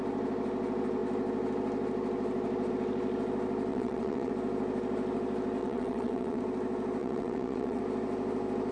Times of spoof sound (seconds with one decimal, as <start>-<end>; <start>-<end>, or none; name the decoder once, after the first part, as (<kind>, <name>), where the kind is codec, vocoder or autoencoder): 3.7-4.3 (vocoder, WaveNeXt); 5.6-6.4; 7.0-7.8